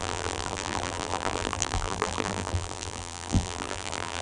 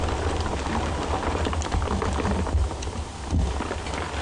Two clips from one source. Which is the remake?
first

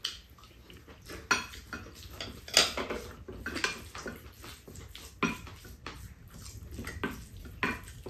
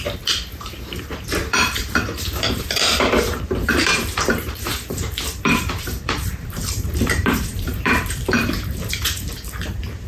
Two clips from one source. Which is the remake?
second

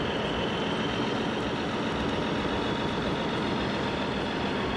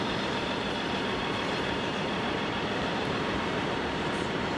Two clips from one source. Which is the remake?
second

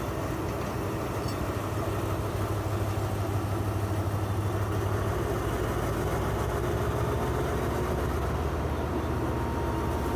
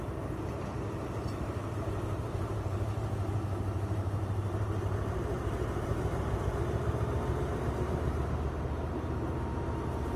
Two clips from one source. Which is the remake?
second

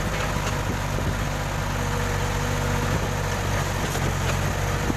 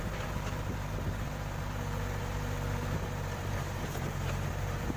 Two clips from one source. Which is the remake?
second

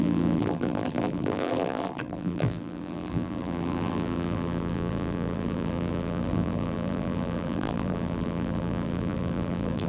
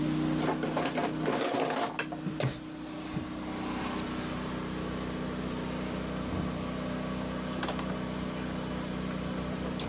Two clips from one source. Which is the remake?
first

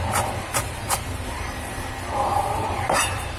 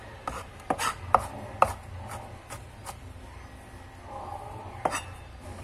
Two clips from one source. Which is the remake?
first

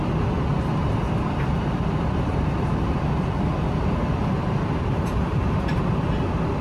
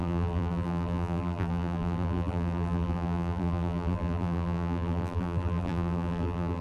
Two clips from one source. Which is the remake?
second